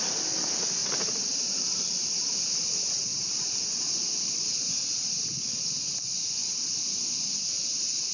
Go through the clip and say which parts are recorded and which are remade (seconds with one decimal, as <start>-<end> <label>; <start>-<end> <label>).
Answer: 0.0-0.8 recorded; 0.8-2.2 remade; 2.2-3.1 recorded; 3.1-4.3 remade; 4.3-8.1 recorded